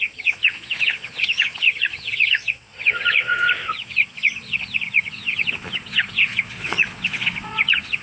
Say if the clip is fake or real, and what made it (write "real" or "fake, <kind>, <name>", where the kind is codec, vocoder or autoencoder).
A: fake, vocoder, Vocos